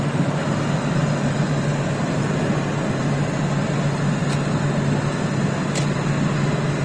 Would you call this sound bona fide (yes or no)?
yes